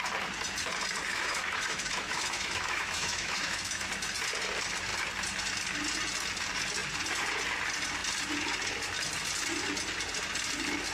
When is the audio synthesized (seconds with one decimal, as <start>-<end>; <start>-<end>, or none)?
1.1-3.9